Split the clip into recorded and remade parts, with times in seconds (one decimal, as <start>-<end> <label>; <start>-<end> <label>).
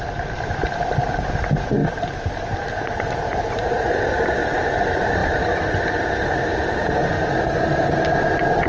0.0-1.8 remade; 1.8-3.0 recorded; 3.0-6.5 remade; 6.5-7.3 recorded; 7.3-8.7 remade